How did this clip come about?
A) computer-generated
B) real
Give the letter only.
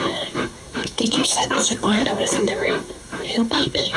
A